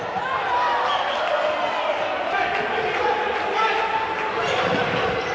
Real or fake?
real